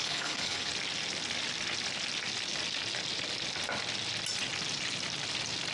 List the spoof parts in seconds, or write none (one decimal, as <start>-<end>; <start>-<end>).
0.0-0.7

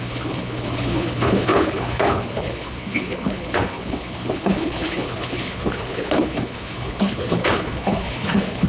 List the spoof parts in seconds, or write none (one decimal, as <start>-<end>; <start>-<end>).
0.0-8.7